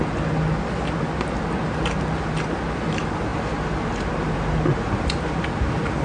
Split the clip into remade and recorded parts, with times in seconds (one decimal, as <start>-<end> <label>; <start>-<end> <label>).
0.0-6.0 recorded